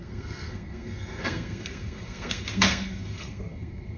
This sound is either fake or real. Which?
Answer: fake